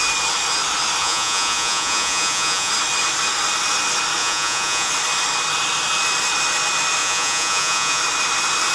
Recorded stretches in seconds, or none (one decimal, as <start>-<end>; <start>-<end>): 0.0-1.0; 2.7-4.2; 4.9-7.0; 8.0-8.7